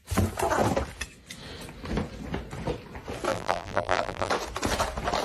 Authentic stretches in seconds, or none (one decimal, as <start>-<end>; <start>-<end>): 0.0-3.3; 4.3-5.2